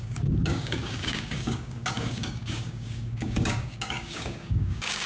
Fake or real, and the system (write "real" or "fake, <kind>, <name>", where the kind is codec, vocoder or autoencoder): fake, codec, DAC